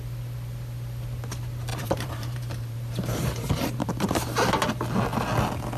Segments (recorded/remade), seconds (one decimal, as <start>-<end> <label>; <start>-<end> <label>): 0.0-1.7 recorded; 1.7-4.5 remade; 4.5-5.8 recorded